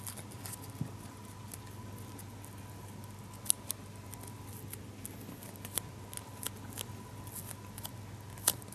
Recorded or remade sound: recorded